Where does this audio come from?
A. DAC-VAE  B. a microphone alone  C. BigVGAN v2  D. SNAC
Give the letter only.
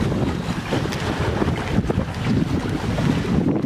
B